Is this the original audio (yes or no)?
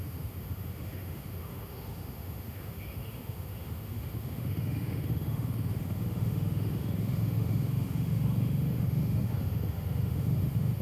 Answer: no